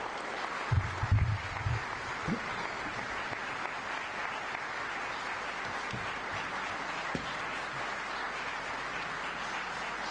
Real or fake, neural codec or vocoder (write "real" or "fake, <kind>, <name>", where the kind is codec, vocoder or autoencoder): real